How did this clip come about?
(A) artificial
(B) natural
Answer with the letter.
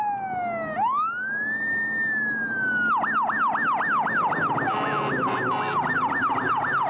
B